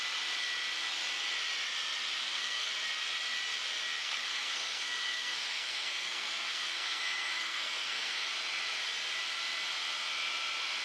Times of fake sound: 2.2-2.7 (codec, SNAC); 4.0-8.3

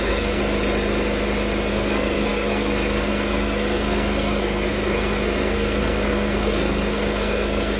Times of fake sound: 0.0-0.4 (codec, SNAC); 1.7-7.8

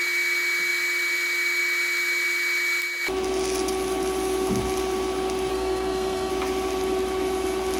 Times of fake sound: 5.5-6.3 (codec, SNAC)

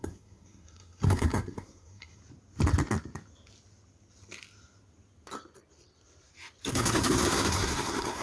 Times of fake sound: 0.0-2.2 (codec, SNAC); 6.7-8.2

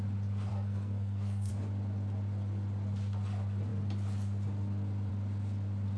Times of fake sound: 0.5-1.5 (codec, SNAC)